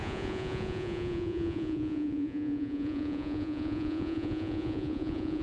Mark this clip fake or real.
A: fake